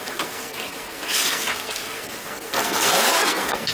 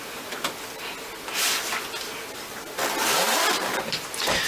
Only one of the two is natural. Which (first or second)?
second